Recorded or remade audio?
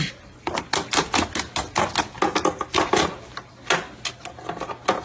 recorded